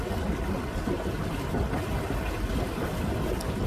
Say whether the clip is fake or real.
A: real